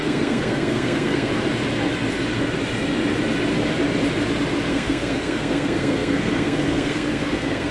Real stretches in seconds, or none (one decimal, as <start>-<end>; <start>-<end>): 1.3-4.7